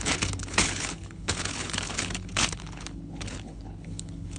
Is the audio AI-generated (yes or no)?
yes